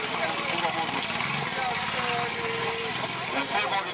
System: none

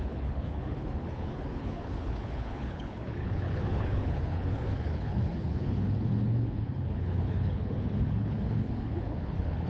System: codec, HILCodec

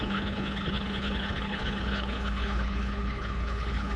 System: codec, HILCodec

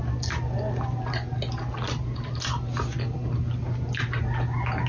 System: none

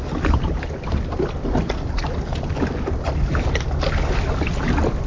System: none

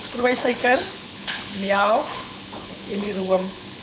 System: codec, HILCodec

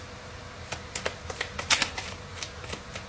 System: none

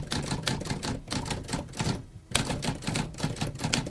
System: none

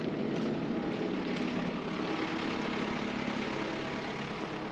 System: none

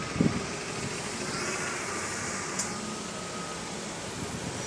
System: none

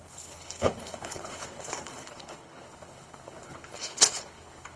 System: codec, HILCodec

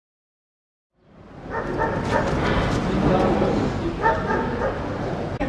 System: none